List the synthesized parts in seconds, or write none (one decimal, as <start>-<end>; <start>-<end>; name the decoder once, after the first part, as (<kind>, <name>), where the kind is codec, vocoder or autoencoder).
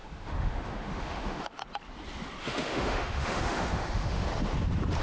0.0-1.6 (autoencoder, DAC-VAE); 2.4-4.3